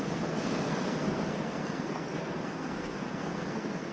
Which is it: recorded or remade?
remade